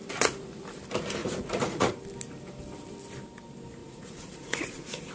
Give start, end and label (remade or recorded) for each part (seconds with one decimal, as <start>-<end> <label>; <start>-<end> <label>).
0.0-1.2 recorded; 1.2-1.9 remade; 1.9-3.8 recorded; 3.8-5.1 remade